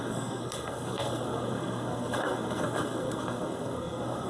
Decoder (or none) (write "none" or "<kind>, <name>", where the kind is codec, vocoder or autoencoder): codec, SNAC